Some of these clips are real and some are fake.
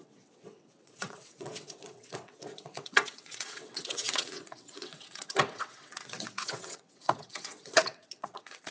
fake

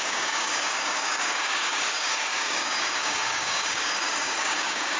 fake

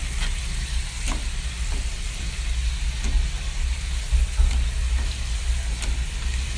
real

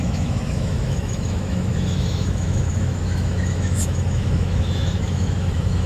fake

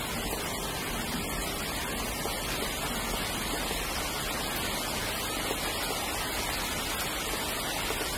real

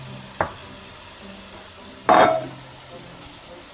real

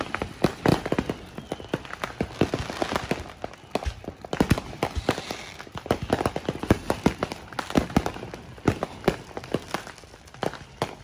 real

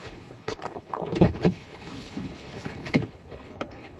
fake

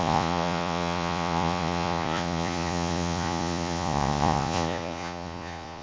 fake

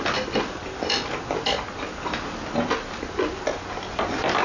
real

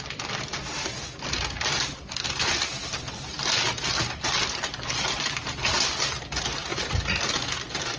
real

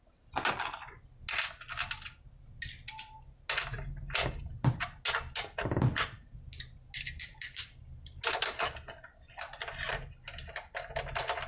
real